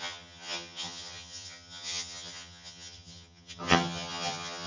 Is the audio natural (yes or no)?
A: no